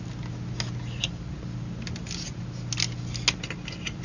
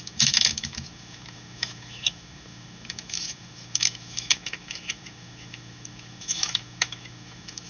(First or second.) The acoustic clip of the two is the first